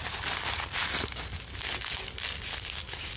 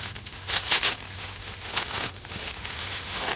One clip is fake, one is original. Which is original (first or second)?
first